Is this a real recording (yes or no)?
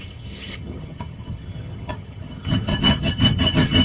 no